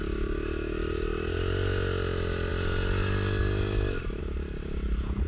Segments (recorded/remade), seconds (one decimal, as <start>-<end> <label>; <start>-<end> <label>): 0.0-5.3 recorded